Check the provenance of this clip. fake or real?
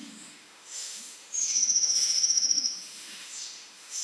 fake